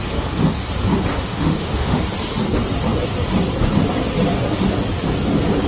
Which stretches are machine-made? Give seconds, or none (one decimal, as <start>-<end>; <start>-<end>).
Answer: 1.1-2.0